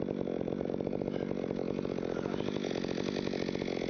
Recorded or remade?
recorded